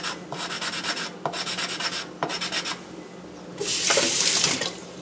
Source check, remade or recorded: recorded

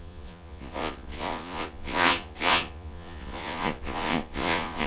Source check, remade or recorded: remade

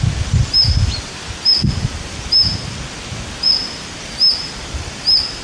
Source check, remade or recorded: recorded